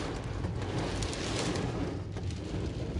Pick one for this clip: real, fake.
real